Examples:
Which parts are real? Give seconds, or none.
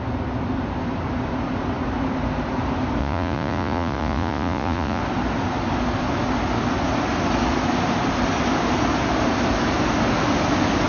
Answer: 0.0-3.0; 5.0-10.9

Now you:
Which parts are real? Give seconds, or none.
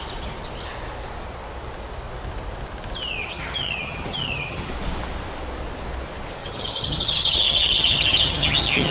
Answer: 0.0-3.2; 4.7-6.4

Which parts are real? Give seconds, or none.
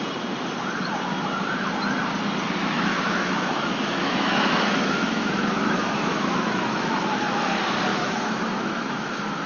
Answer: 0.0-2.6; 7.0-7.9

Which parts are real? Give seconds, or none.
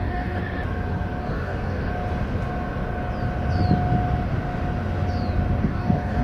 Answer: 0.4-1.2; 1.9-5.6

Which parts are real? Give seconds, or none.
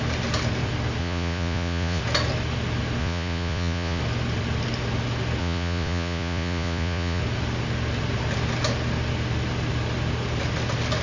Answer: 0.0-1.0; 2.0-3.0; 4.0-5.4; 7.2-11.0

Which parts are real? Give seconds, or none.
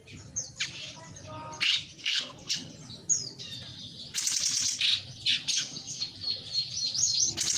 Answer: 0.0-2.0; 2.7-5.5; 6.0-7.6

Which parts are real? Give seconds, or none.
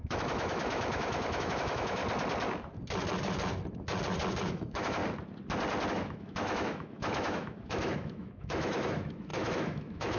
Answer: 2.0-4.5; 5.0-5.9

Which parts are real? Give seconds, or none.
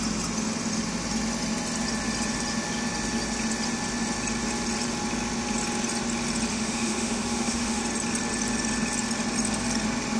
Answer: 0.0-6.5; 7.8-10.2